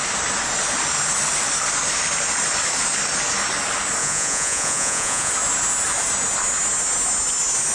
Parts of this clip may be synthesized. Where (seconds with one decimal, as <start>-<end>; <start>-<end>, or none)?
4.0-5.3